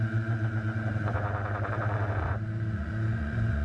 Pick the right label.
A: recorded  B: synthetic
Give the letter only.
B